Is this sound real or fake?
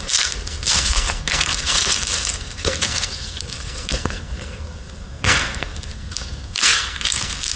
fake